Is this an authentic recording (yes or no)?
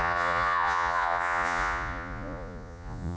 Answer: no